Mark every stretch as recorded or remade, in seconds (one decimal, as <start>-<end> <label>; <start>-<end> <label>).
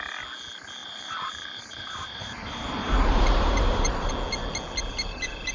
0.0-0.8 recorded; 0.8-4.1 remade; 4.1-5.5 recorded